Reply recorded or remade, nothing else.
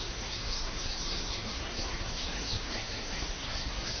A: remade